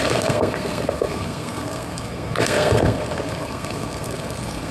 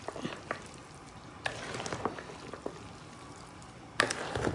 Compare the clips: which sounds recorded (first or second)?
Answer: second